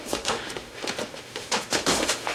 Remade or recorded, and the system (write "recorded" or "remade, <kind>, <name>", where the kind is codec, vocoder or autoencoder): remade, autoencoder, DAC-VAE